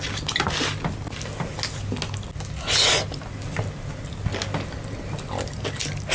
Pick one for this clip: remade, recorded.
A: recorded